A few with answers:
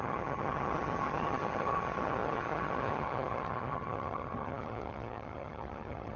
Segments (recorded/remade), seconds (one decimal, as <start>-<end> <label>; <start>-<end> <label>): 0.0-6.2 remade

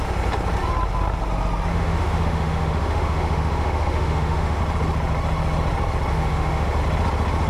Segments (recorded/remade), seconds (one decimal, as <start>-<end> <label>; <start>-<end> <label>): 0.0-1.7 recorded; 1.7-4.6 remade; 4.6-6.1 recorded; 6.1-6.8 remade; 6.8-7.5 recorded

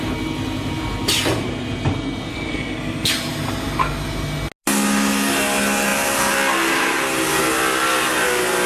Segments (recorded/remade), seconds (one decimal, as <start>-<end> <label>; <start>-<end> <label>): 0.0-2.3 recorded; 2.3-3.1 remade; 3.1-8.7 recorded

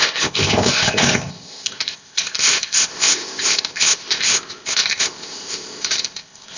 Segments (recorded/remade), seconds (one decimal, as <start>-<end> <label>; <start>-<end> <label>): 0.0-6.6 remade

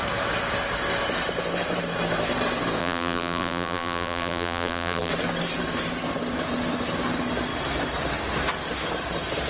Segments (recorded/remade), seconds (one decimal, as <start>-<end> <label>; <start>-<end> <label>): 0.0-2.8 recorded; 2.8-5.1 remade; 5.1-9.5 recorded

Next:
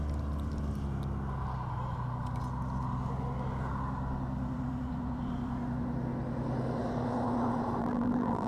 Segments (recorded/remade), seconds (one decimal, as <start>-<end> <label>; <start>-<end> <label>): 0.0-7.8 recorded; 7.8-8.5 remade

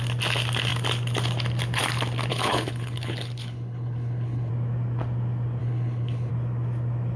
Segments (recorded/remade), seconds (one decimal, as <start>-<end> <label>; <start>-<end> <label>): 0.0-2.3 recorded; 2.3-4.5 remade; 4.5-5.6 recorded; 5.6-6.3 remade; 6.3-7.2 recorded

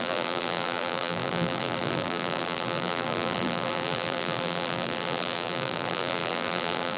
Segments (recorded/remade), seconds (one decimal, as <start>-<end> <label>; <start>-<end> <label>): 0.0-7.0 remade